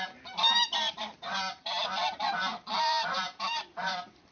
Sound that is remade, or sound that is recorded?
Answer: remade